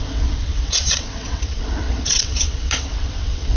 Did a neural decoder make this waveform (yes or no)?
yes